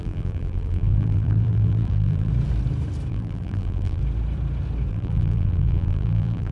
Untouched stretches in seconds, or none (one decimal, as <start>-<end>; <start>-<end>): 2.3-3.1; 4.0-4.9